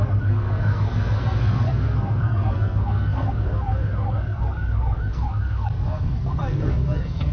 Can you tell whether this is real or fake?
fake